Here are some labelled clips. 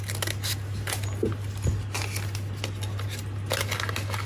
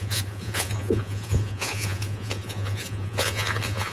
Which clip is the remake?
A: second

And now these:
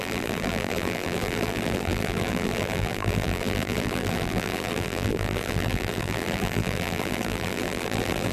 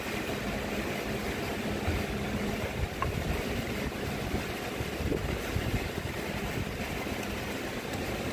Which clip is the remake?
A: first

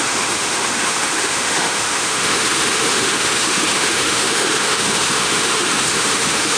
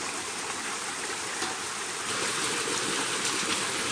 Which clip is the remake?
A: first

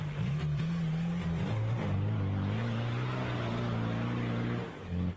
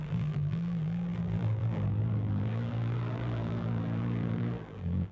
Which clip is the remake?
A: second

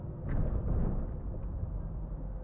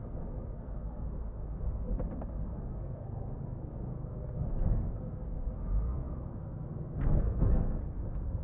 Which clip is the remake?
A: second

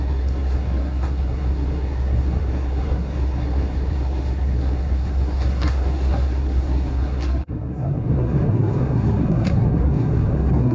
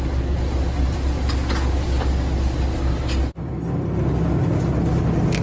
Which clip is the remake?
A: first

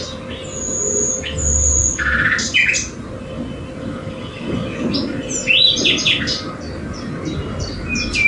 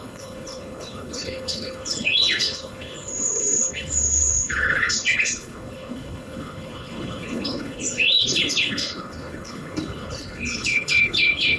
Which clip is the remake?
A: second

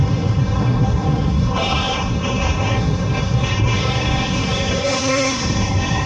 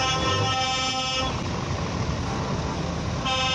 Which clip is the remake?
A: first